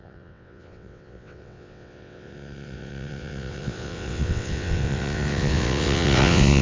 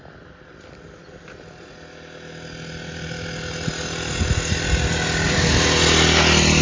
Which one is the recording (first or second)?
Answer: second